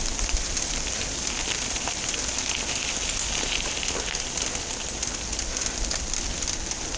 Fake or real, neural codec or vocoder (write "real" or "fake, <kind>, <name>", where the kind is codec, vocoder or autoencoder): real